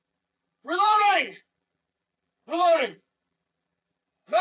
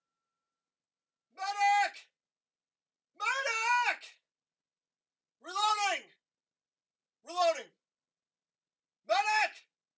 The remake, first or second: first